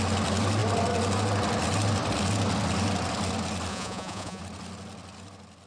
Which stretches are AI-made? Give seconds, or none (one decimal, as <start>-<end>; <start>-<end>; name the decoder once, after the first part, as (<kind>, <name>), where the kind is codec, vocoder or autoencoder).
3.7-4.4 (vocoder, Vocos)